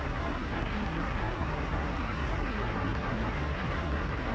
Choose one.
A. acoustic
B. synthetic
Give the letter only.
B